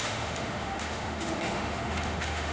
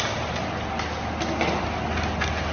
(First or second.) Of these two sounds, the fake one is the first